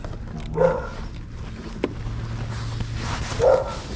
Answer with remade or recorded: recorded